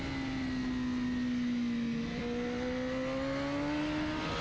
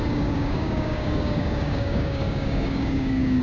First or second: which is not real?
second